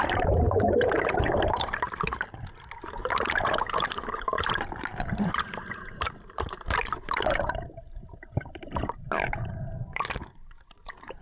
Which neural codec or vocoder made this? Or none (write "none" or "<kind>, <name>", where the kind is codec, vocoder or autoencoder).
vocoder, BigVGAN v2